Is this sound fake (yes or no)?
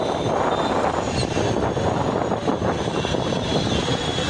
no